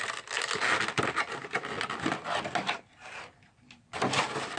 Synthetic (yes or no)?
no